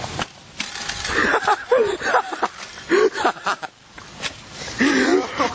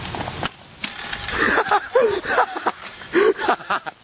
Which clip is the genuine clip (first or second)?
second